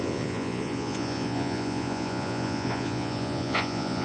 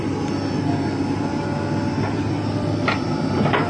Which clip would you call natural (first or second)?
second